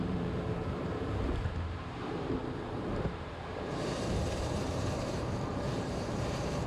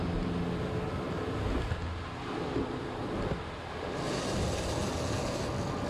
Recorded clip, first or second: second